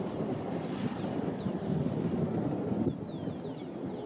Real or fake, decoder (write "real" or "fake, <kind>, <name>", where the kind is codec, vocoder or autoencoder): fake, vocoder, BigVGAN v2